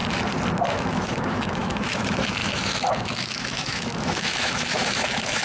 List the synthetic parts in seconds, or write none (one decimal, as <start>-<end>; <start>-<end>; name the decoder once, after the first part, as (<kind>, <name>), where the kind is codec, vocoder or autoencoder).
0.7-5.4 (autoencoder, DAC-VAE)